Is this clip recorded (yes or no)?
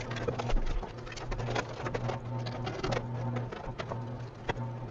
yes